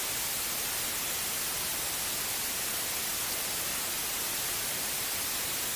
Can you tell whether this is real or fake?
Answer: real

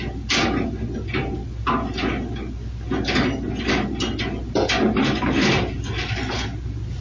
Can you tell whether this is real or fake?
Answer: real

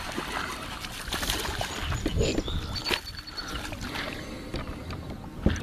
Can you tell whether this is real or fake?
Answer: real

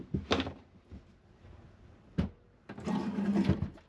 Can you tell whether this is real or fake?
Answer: real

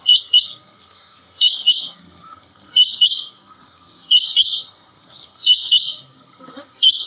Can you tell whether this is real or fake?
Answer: fake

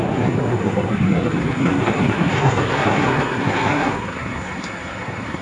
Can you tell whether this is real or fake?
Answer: fake